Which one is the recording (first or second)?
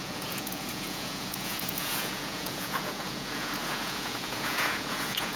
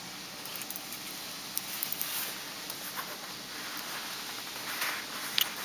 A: second